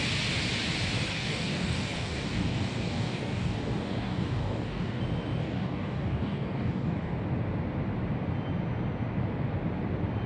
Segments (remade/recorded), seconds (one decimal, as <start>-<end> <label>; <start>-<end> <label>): 0.0-1.1 recorded; 1.1-5.0 remade; 5.0-5.4 recorded; 5.4-7.1 remade; 7.1-10.3 recorded

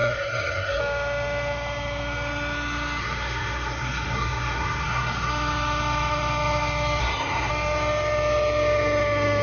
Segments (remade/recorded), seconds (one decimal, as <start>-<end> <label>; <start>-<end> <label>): 0.0-0.8 remade; 0.8-3.0 recorded; 3.0-5.3 remade; 5.3-7.0 recorded; 7.0-7.5 remade; 7.5-9.4 recorded

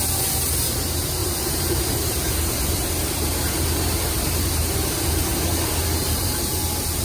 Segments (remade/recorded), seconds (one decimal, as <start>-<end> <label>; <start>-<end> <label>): 0.0-1.2 recorded; 1.2-5.4 remade; 5.4-6.0 recorded; 6.0-6.6 remade; 6.6-7.0 recorded

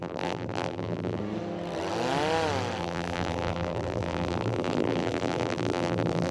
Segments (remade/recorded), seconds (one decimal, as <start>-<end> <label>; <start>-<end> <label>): 0.0-1.2 remade; 1.2-2.8 recorded; 2.8-6.3 remade

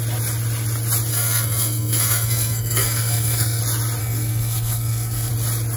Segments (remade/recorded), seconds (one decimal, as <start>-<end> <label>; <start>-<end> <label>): 0.0-1.1 recorded; 1.1-3.6 remade; 3.6-4.0 recorded; 4.0-5.3 remade; 5.3-5.8 recorded